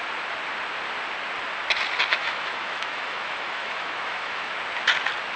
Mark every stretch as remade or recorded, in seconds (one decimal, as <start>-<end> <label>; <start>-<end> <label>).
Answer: 0.0-2.1 recorded; 2.1-4.5 remade; 4.5-5.4 recorded